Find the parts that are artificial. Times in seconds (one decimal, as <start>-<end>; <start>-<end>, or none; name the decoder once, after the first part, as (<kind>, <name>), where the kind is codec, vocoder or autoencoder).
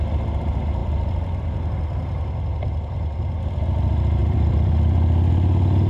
0.8-1.4 (vocoder, BigVGAN v2); 4.2-5.3